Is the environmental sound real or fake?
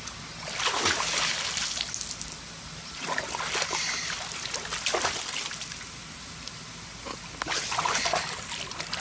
real